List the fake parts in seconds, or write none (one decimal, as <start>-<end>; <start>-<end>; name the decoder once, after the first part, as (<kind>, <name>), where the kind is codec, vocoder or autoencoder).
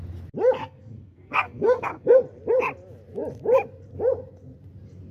0.6-2.2 (codec, SNAC)